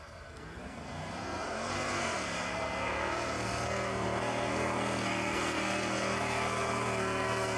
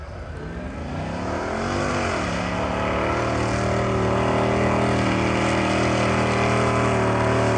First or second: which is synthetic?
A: first